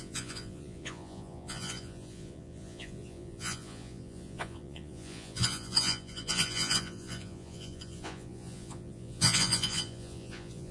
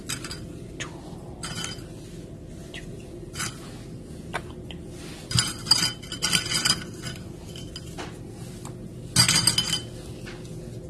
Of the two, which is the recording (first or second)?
second